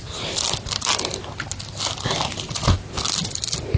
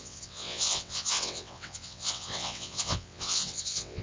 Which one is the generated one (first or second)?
second